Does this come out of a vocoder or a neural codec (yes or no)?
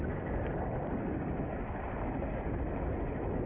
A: no